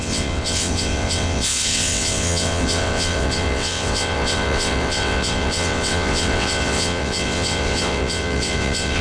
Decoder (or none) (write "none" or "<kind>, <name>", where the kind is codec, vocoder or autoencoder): vocoder, WaveNeXt